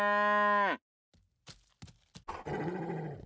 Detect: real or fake real